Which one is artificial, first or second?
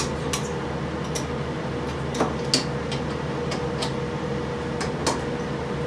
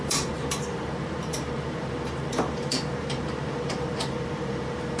second